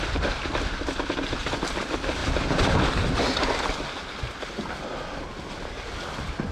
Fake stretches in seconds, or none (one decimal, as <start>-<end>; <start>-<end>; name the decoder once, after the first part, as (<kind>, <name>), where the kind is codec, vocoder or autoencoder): 2.2-3.2 (vocoder, BigVGAN v2)